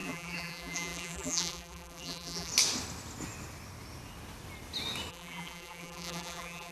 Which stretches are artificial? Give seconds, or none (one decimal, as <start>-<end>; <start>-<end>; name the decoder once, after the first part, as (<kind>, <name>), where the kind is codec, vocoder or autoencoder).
0.0-2.5 (vocoder, BigVGAN v2); 5.1-6.7

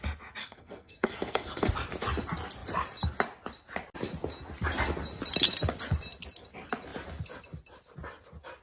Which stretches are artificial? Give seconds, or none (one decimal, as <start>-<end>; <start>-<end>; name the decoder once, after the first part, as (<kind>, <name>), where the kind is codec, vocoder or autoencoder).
0.4-1.7 (codec, SNAC)